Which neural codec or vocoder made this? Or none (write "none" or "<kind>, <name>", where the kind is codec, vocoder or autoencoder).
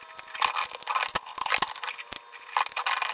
none